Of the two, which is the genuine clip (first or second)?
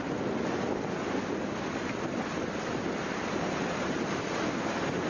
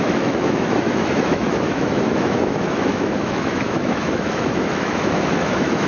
first